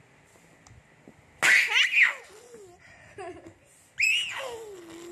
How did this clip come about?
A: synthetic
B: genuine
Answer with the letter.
B